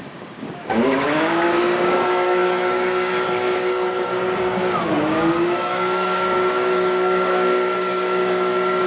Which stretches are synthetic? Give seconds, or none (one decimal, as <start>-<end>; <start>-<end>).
0.0-8.9